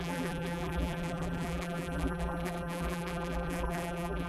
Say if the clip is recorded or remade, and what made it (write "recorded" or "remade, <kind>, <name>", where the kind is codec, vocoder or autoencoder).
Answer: remade, vocoder, BigVGAN v2